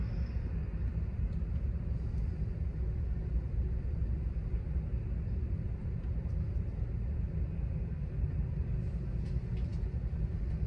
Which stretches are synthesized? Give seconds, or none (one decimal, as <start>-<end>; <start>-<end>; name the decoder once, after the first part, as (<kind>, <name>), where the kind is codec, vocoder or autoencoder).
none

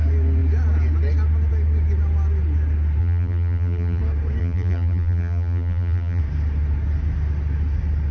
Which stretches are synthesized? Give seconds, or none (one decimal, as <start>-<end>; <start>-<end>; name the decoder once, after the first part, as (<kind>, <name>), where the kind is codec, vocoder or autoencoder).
3.0-4.0 (vocoder, BigVGAN v2); 4.4-6.2

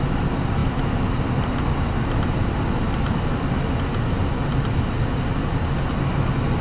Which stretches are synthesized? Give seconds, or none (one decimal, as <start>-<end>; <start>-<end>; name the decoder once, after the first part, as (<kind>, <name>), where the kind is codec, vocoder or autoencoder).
none